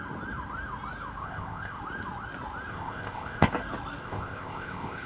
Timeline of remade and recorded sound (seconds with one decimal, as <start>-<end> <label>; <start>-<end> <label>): 0.0-1.2 recorded; 1.2-1.8 remade; 1.8-2.7 recorded; 2.7-3.5 remade; 3.5-4.0 recorded; 4.0-5.1 remade